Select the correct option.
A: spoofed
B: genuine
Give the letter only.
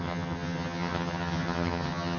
A